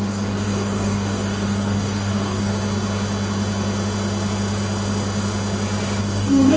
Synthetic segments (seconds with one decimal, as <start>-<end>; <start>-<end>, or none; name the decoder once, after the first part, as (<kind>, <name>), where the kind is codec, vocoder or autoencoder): 0.0-2.5 (codec, DAC); 6.0-6.6